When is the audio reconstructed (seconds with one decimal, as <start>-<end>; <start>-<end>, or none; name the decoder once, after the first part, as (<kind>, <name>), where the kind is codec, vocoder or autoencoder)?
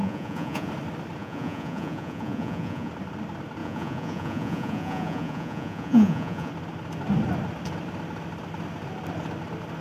0.0-0.7 (vocoder, Vocos); 1.2-2.9; 3.6-6.5